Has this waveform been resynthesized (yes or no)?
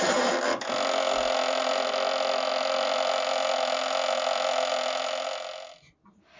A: no